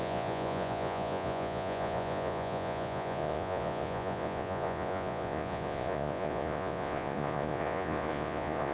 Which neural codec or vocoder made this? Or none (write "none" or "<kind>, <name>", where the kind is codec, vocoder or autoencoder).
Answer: vocoder, Vocos